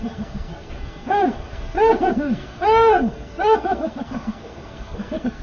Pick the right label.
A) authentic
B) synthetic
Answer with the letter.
B